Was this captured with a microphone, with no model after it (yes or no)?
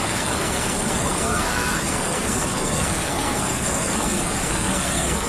no